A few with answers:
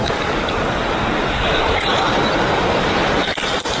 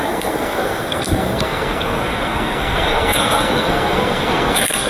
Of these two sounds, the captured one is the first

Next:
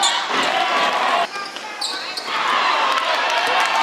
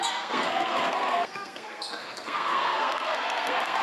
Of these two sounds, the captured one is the first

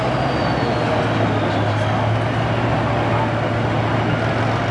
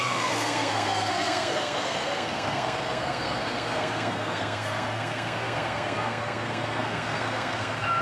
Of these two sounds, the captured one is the first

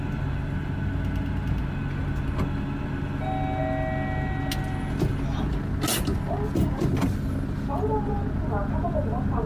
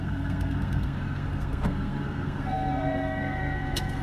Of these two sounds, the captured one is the first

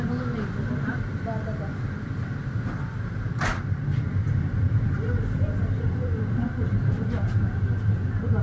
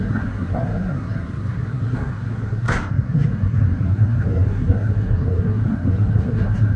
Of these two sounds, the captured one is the first